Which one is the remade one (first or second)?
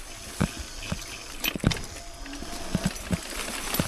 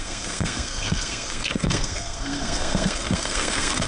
second